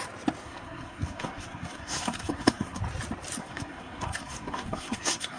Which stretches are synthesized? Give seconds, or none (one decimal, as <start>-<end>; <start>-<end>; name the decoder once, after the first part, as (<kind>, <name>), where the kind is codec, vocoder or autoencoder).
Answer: 0.4-2.8 (codec, SNAC); 3.4-5.4